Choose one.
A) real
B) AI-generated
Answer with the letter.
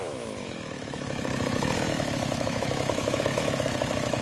B